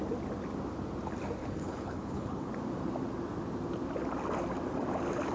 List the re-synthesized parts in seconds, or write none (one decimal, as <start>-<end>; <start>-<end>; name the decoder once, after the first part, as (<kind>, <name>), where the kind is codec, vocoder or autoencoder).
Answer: 1.4-2.5 (codec, HILCodec)